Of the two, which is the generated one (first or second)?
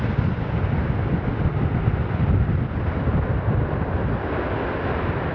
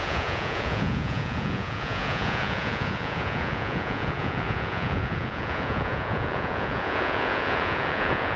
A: second